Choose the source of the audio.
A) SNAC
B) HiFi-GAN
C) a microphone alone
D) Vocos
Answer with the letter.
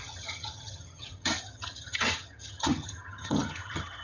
B